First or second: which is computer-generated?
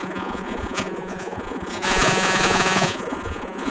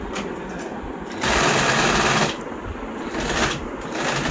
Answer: first